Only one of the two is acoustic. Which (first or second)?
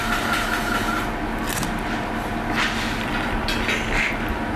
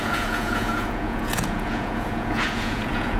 first